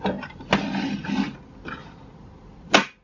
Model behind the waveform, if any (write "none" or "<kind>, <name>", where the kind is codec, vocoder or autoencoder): none